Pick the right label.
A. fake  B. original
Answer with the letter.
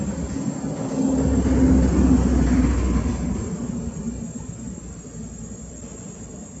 B